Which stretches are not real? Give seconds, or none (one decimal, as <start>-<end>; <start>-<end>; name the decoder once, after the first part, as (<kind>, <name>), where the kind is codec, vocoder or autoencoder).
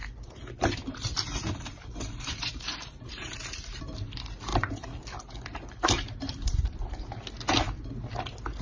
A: 0.0-3.8 (vocoder, BigVGAN v2)